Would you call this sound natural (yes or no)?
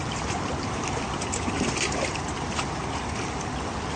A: yes